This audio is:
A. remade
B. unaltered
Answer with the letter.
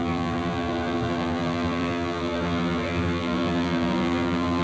A